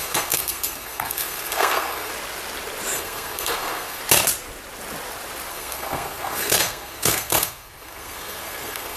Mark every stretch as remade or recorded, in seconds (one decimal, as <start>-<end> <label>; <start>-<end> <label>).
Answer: 0.0-2.1 remade; 2.1-2.9 recorded; 2.9-4.0 remade; 4.0-5.5 recorded; 5.5-9.0 remade